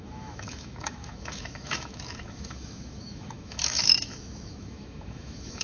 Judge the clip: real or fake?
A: fake